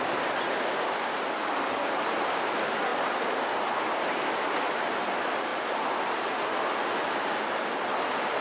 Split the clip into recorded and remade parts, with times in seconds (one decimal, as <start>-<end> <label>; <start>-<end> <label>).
0.0-8.4 recorded